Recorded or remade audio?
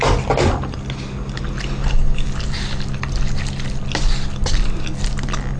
recorded